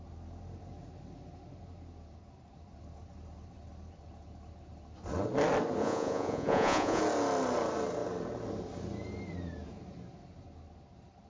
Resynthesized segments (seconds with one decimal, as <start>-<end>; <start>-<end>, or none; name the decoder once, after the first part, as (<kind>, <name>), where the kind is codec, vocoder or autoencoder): 5.8-7.0 (vocoder, Vocos)